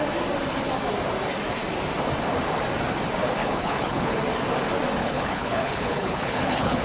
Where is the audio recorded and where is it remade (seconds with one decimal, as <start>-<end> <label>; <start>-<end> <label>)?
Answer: 0.0-3.4 recorded; 3.4-4.1 remade; 4.1-5.0 recorded; 5.0-6.8 remade